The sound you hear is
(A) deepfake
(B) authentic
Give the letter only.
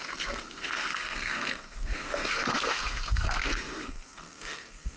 A